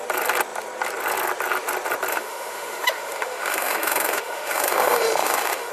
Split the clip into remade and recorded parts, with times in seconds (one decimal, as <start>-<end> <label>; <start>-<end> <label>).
0.0-2.1 recorded; 2.1-5.7 remade

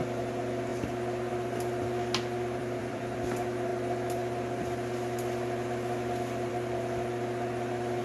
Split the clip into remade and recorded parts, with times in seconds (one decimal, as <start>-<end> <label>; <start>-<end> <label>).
0.0-2.6 recorded; 2.6-3.2 remade; 3.2-8.0 recorded

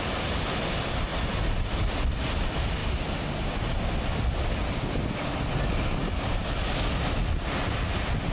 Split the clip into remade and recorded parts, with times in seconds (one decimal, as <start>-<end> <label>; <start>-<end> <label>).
0.0-8.3 recorded